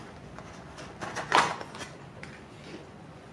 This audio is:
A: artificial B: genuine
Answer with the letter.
A